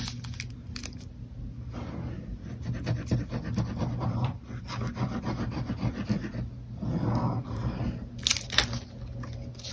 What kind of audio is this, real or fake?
real